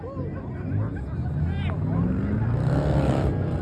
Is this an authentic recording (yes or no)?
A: yes